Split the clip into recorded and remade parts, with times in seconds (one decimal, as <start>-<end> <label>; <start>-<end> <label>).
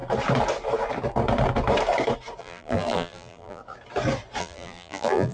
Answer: 0.0-2.4 recorded; 2.4-3.6 remade; 3.6-4.4 recorded; 4.4-5.3 remade